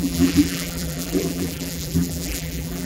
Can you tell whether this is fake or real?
fake